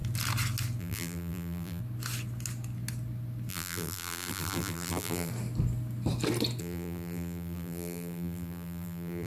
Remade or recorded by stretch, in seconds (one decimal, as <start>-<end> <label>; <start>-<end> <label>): 0.0-0.8 recorded; 0.8-1.8 remade; 1.8-3.5 recorded; 3.5-5.3 remade; 5.3-6.6 recorded; 6.6-9.3 remade